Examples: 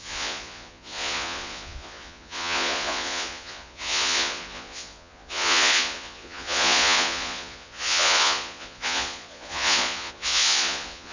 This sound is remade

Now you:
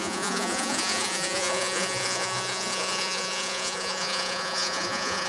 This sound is remade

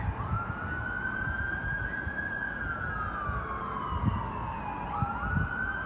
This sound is recorded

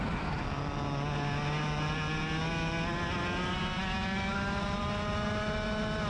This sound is recorded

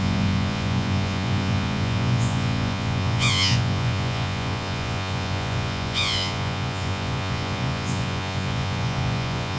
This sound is remade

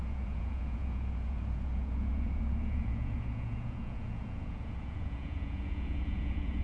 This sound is remade